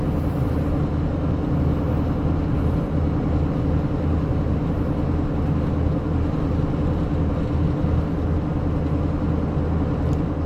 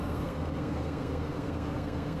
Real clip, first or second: first